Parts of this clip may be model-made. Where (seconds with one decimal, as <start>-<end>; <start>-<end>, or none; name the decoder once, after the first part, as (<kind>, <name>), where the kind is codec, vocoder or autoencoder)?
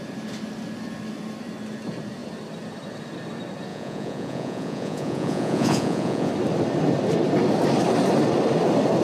3.7-6.3 (vocoder, Vocos)